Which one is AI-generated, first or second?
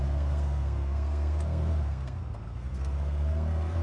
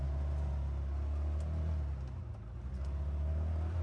first